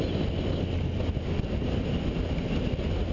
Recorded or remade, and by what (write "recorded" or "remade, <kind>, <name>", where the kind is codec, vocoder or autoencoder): recorded